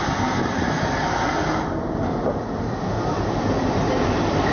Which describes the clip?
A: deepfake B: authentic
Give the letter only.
B